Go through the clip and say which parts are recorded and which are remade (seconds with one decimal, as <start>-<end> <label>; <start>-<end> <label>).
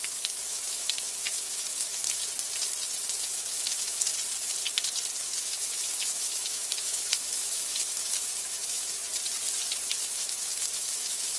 0.0-2.2 remade; 2.2-3.2 recorded; 3.2-4.1 remade; 4.1-5.2 recorded; 5.2-9.0 remade; 9.0-10.0 recorded; 10.0-11.4 remade